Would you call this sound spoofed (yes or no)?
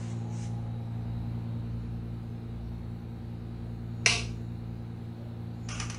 no